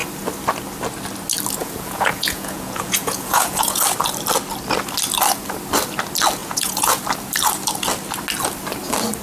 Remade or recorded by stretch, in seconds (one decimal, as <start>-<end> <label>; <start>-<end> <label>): 0.0-1.6 recorded; 1.6-3.8 remade; 3.8-6.4 recorded; 6.4-7.0 remade; 7.0-9.2 recorded